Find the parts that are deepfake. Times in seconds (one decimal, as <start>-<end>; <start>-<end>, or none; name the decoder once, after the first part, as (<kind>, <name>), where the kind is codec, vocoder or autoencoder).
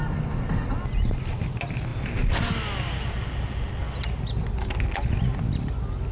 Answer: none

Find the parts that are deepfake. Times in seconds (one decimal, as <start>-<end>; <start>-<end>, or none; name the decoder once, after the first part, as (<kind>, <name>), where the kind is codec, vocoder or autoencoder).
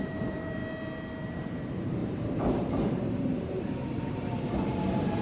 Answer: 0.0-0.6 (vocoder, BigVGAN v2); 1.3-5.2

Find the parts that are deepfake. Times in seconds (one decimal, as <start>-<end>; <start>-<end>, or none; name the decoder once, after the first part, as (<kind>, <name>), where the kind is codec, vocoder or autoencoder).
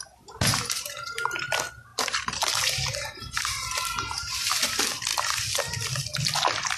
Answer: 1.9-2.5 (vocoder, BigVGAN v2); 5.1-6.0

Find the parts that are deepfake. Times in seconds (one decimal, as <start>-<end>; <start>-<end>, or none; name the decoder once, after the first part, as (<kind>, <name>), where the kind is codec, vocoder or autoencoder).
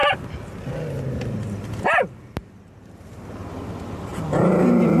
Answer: 4.1-5.0 (vocoder, BigVGAN v2)